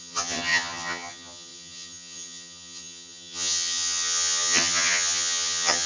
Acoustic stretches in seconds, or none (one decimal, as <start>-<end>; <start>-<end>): none